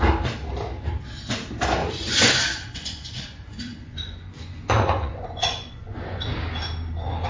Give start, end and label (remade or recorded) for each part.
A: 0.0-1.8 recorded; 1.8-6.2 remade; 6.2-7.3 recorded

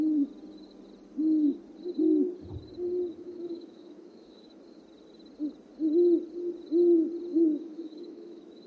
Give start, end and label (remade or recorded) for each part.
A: 0.0-3.1 recorded; 3.1-4.6 remade; 4.6-7.3 recorded; 7.3-8.7 remade

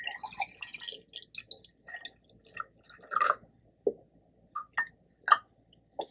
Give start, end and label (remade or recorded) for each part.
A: 0.0-6.1 recorded

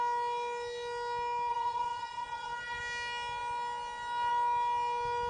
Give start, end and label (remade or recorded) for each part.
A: 0.0-1.5 recorded; 1.5-2.8 remade; 2.8-5.3 recorded